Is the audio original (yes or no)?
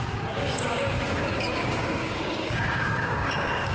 no